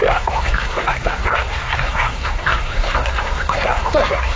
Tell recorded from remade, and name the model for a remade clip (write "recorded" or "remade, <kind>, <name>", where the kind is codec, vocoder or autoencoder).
remade, codec, SNAC